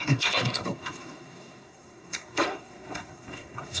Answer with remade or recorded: remade